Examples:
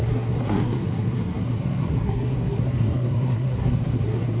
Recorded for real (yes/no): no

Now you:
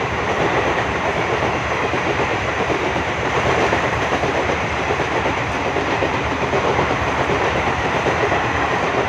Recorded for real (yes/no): no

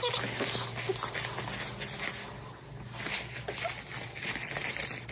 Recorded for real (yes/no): yes